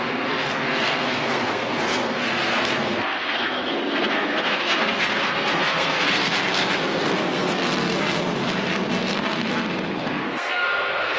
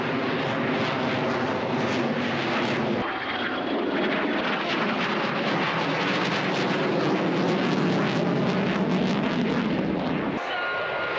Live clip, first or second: second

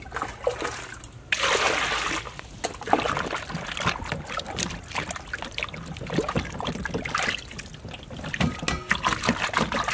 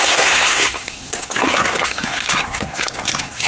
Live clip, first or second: first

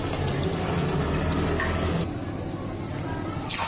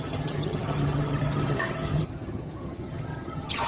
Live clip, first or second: first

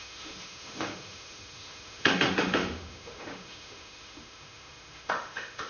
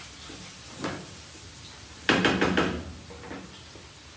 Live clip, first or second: second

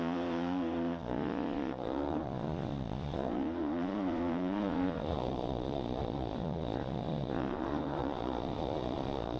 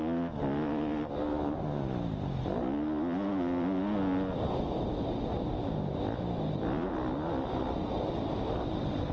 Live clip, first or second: second